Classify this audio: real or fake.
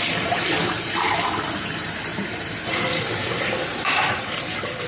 fake